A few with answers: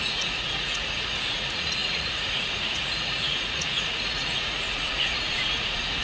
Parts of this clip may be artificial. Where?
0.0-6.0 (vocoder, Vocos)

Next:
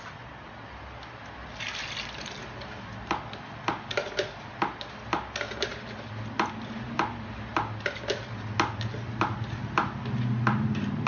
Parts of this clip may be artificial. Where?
none

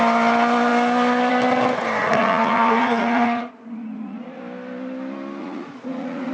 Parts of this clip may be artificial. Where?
2.0-4.4 (vocoder, Vocos); 5.4-6.3

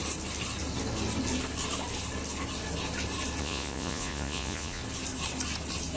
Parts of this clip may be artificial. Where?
3.4-4.8 (vocoder, Vocos)

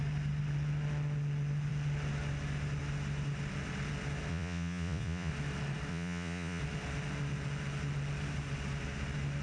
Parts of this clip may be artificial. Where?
4.3-5.3 (vocoder, Vocos); 5.9-6.6

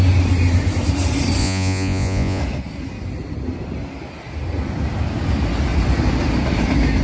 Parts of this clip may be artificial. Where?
1.4-2.4 (vocoder, Vocos)

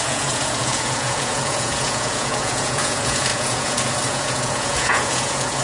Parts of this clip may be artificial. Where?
0.0-5.6 (vocoder, Vocos)

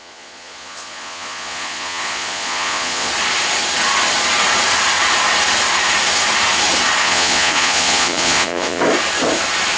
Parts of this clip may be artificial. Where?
0.0-3.1 (vocoder, Vocos); 7.0-8.8